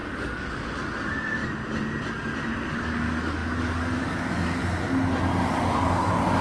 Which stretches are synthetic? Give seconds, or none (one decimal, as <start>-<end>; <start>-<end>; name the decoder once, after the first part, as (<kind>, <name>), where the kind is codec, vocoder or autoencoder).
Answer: 0.0-1.4 (codec, DAC); 2.7-4.6; 5.5-6.4